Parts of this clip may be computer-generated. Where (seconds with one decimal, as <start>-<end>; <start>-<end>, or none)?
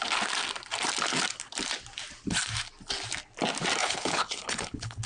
3.8-5.1